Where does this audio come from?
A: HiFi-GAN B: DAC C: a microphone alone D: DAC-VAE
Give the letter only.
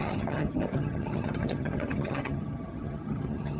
A